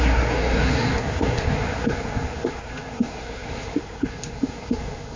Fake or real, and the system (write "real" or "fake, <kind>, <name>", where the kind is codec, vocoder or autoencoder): fake, codec, SNAC